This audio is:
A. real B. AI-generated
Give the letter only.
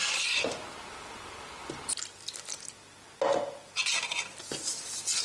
A